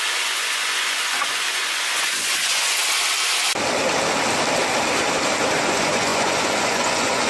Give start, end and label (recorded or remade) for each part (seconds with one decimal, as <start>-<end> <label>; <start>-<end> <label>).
0.0-2.8 remade; 2.8-5.6 recorded; 5.6-7.3 remade

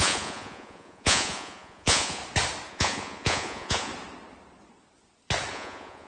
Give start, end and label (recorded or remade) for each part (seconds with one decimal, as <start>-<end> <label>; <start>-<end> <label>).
0.0-2.2 remade; 2.2-2.7 recorded; 2.7-3.9 remade; 3.9-5.5 recorded; 5.5-6.1 remade

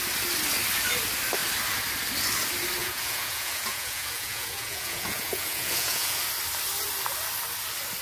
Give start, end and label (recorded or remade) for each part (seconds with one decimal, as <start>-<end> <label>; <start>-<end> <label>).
0.0-2.8 recorded; 2.8-6.2 remade; 6.2-8.0 recorded

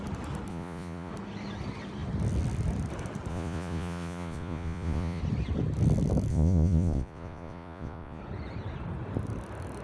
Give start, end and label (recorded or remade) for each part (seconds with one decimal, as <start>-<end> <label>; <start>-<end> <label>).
0.0-0.5 recorded; 0.5-1.1 remade; 1.1-3.3 recorded; 3.3-5.2 remade; 5.2-6.3 recorded; 6.3-8.2 remade; 8.2-9.8 recorded

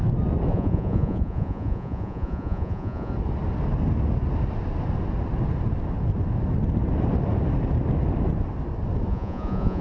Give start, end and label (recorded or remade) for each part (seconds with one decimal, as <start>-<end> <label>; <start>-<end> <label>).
0.0-0.5 recorded; 0.5-3.1 remade; 3.1-9.1 recorded; 9.1-9.8 remade

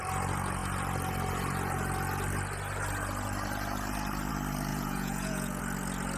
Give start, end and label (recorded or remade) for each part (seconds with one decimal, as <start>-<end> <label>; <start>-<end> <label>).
0.0-4.7 recorded; 4.7-5.6 remade; 5.6-6.2 recorded